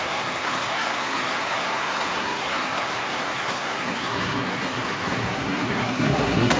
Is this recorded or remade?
remade